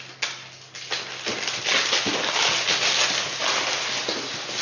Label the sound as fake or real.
real